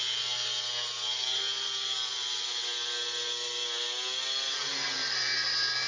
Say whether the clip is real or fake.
real